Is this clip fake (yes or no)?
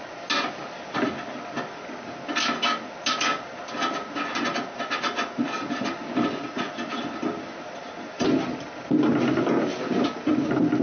no